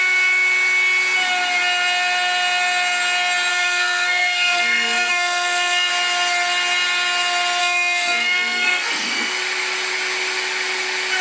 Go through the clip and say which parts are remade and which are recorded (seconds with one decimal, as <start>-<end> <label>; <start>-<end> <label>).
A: 0.0-3.5 recorded; 3.5-5.9 remade; 5.9-7.6 recorded; 7.6-9.3 remade; 9.3-11.2 recorded